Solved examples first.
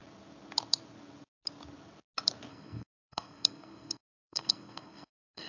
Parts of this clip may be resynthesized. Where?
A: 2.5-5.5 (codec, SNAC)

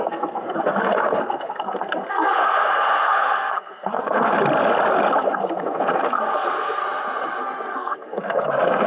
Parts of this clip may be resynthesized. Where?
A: 0.0-4.3 (codec, SNAC); 5.2-6.8; 7.4-8.9

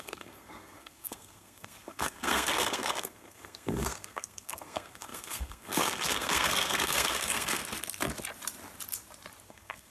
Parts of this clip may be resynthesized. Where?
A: 0.0-7.6 (codec, SNAC); 9.5-9.9

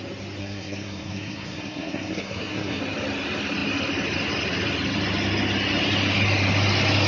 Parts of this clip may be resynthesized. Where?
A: 0.4-2.8 (codec, SNAC)

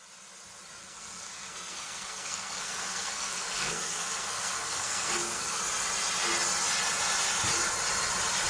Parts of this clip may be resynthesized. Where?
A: 0.8-5.6 (codec, SNAC)

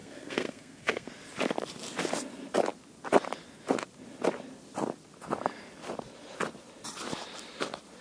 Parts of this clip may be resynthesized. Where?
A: 0.0-1.1 (codec, SNAC)

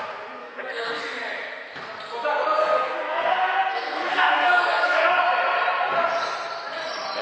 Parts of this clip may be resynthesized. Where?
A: 0.4-1.0 (codec, SNAC); 2.6-5.1